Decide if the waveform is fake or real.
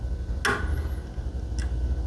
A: real